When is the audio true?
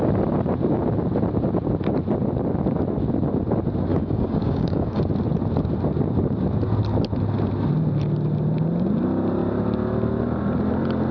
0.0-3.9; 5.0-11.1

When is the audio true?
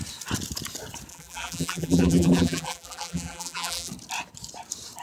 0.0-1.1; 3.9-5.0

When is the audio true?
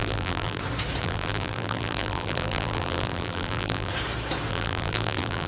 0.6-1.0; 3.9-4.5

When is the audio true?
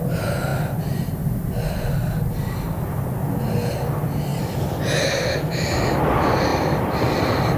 0.0-4.3; 6.0-6.5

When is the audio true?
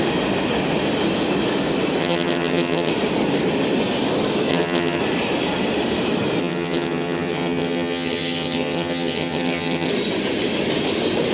0.0-2.0; 2.9-4.5; 5.0-6.4; 9.9-11.3